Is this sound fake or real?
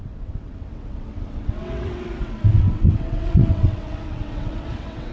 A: fake